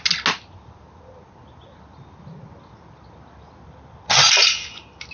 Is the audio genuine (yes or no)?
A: yes